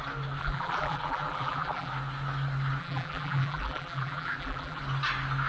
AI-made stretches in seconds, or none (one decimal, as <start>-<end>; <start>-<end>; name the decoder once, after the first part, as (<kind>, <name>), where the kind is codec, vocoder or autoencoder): 0.4-1.9 (vocoder, BigVGAN v2); 2.8-4.8